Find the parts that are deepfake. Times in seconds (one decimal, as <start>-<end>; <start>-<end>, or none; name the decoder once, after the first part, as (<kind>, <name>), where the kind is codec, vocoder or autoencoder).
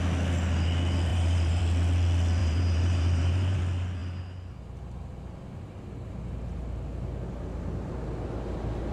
1.1-1.6 (vocoder, BigVGAN v2); 2.4-3.6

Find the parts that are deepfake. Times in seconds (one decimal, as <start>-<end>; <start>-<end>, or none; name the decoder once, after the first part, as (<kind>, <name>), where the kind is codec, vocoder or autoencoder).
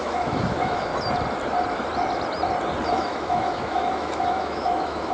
0.0-0.9 (autoencoder, DAC-VAE); 2.9-5.1